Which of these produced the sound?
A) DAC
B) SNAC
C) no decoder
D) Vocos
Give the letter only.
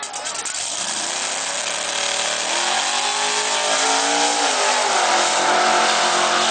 C